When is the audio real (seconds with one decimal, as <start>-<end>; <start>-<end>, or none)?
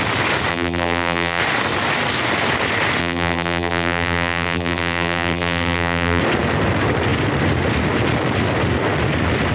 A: 0.0-0.5; 1.4-3.0; 6.2-9.5